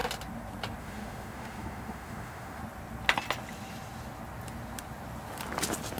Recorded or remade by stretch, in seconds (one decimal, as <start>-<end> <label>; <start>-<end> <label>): 0.0-0.8 recorded; 0.8-2.6 remade; 2.6-6.0 recorded